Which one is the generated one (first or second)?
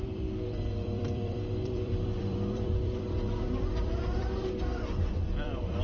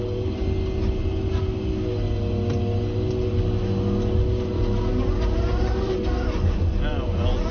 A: first